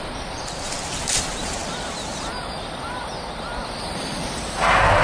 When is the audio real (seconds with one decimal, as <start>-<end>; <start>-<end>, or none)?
0.0-5.0

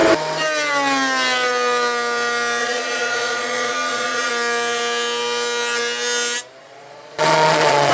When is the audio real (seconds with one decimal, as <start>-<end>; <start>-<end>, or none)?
0.0-2.6; 4.3-6.6